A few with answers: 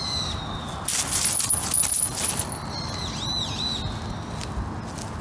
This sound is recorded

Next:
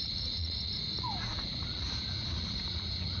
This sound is remade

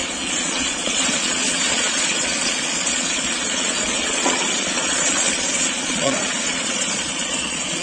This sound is remade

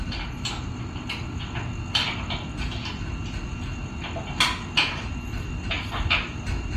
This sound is recorded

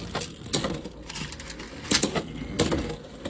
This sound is recorded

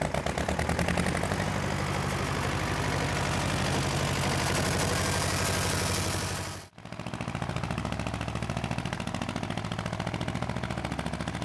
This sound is recorded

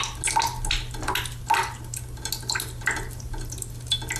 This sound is recorded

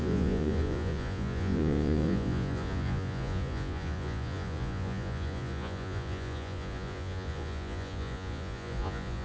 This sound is remade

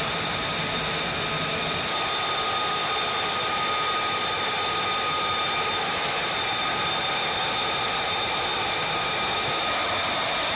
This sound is recorded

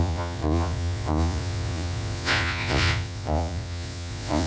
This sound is remade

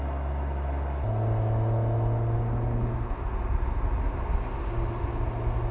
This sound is recorded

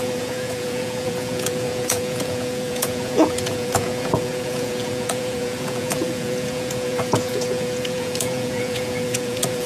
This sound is remade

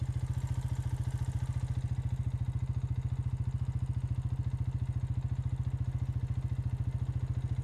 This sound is recorded